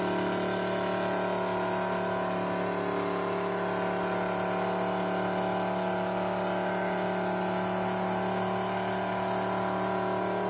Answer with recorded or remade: recorded